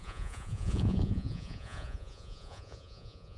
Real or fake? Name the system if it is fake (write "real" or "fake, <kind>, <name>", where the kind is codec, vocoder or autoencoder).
fake, vocoder, Vocos